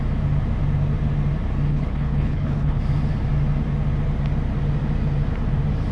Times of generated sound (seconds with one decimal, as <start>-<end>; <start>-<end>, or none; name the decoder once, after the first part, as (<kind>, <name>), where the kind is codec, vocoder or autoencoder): 1.7-2.8 (codec, HILCodec)